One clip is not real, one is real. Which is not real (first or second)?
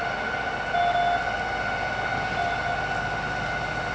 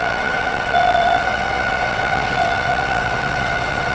second